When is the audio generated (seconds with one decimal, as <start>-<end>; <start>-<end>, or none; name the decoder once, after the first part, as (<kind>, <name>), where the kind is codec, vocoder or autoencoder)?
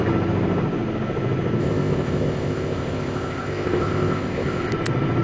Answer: 1.6-4.7 (codec, ZipCodec)